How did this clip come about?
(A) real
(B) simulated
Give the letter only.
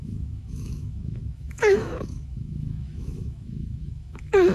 B